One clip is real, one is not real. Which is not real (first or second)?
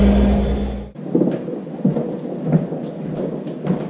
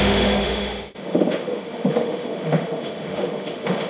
second